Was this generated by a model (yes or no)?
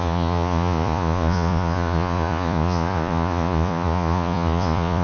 yes